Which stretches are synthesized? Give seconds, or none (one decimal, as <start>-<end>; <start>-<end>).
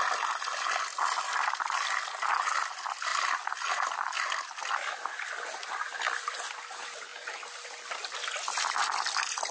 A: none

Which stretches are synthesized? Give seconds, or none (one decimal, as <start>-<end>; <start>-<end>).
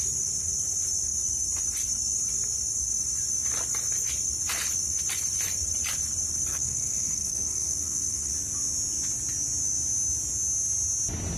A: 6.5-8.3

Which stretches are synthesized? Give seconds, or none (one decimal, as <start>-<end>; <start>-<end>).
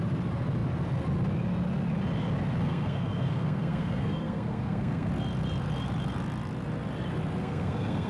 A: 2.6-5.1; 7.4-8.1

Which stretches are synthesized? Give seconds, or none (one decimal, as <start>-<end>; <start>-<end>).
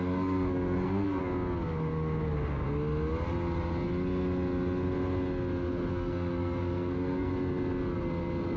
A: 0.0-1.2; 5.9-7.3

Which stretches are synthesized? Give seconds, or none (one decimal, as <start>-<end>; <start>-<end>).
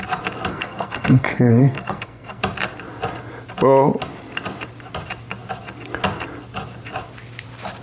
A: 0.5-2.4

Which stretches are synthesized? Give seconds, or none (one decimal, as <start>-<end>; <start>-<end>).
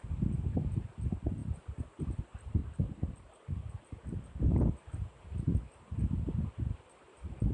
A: none